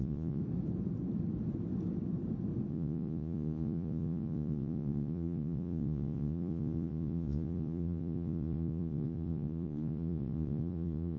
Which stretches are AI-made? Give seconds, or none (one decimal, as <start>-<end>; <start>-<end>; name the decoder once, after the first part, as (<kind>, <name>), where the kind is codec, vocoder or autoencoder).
0.0-0.4 (vocoder, Vocos); 2.7-11.2